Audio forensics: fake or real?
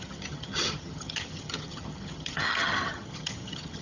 fake